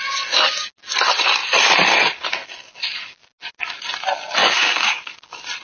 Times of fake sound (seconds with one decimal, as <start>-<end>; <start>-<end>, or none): 4.4-5.1